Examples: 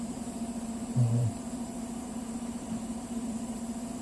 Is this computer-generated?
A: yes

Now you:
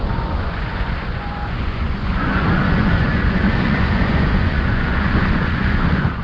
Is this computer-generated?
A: yes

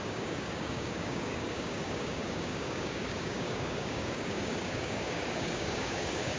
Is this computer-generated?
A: yes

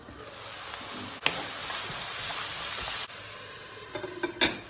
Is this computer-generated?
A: no